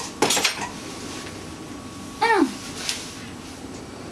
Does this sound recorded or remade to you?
recorded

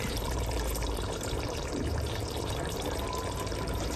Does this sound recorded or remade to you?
remade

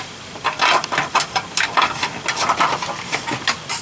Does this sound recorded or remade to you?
recorded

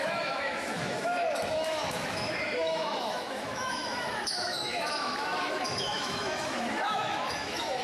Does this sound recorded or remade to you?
remade